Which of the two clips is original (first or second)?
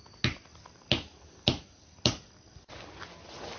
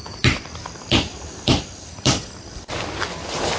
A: first